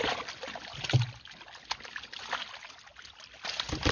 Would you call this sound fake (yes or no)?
no